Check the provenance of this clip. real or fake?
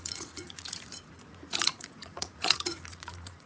fake